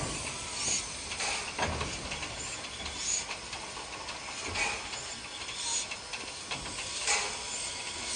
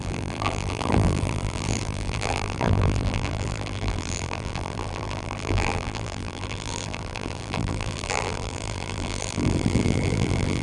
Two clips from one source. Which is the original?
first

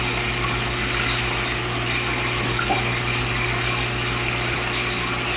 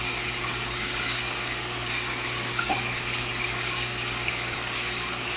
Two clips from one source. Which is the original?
first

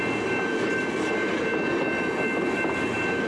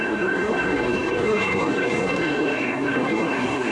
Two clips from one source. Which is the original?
first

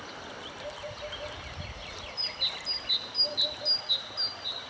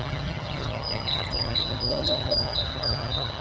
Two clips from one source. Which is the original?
first